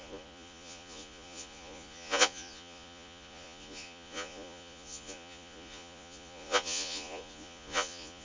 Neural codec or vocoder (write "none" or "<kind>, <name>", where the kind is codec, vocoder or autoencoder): vocoder, Vocos